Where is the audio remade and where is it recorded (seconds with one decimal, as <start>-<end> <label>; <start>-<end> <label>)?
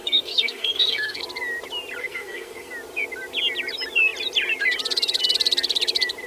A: 0.0-1.2 remade; 1.2-2.0 recorded; 2.0-2.7 remade; 2.7-6.3 recorded